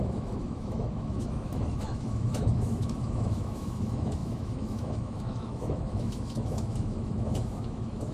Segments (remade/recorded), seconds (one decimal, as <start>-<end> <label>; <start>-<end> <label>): 0.0-8.1 remade